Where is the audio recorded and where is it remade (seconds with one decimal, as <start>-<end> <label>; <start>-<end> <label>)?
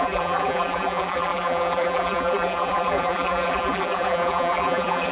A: 0.0-5.1 remade